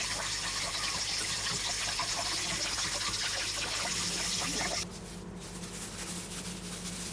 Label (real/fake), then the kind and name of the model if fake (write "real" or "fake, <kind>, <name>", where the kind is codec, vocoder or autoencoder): real